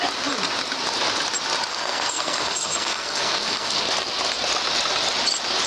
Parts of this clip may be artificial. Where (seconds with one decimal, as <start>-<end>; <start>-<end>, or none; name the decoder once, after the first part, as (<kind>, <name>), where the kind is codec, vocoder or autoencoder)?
1.7-3.8 (codec, SNAC)